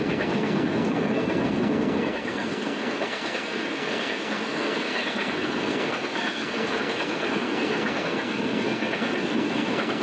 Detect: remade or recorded remade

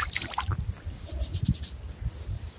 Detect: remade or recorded recorded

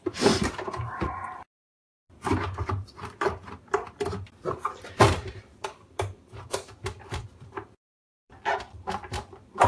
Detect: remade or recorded remade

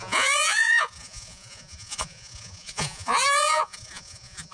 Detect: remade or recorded remade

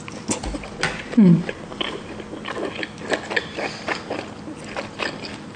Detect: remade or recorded recorded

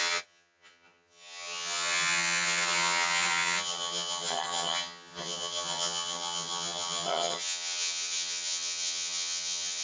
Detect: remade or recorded remade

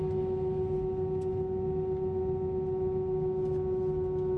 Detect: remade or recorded recorded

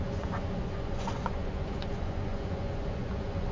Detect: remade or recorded remade